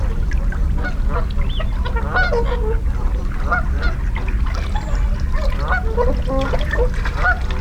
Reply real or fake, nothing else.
real